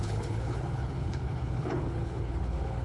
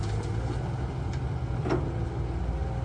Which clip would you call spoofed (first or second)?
first